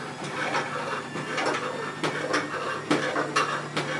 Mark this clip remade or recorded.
recorded